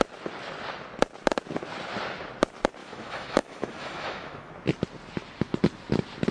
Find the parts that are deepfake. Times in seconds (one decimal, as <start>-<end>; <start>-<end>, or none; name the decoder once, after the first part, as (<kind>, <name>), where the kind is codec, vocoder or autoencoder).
2.8-4.5 (autoencoder, DAC-VAE)